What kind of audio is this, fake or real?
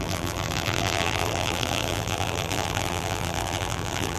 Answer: fake